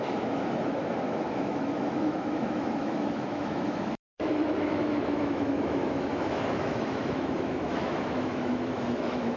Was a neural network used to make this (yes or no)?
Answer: yes